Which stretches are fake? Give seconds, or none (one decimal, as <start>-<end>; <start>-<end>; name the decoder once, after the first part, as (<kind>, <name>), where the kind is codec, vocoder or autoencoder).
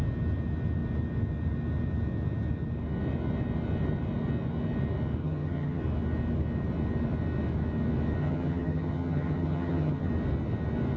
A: 5.2-5.8 (vocoder, HiFi-GAN); 8.2-10.1